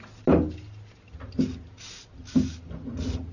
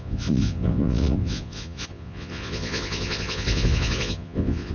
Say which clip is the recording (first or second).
first